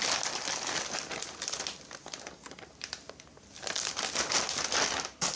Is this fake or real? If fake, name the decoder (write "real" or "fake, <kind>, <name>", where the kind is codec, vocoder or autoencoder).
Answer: real